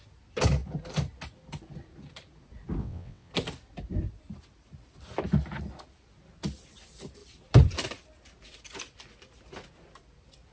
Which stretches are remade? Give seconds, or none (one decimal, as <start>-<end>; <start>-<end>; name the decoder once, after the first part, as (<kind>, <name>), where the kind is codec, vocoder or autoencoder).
2.8-3.3 (vocoder, WaveNeXt)